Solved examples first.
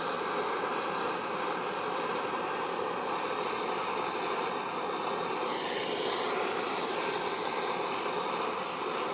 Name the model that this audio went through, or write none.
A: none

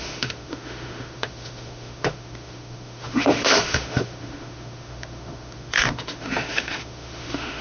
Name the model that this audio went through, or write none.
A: autoencoder, DAC-VAE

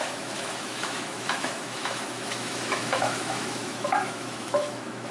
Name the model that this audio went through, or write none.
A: autoencoder, DAC-VAE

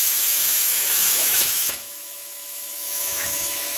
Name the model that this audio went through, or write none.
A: autoencoder, DAC-VAE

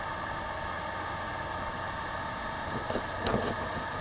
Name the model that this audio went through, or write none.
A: none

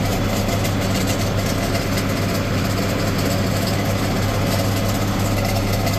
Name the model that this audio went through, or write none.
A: none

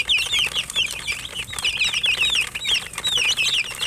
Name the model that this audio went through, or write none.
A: none